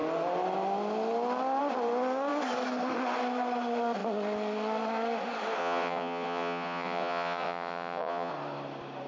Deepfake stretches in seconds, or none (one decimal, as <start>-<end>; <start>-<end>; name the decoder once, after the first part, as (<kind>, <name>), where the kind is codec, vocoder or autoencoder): 5.6-8.3 (vocoder, WaveNeXt)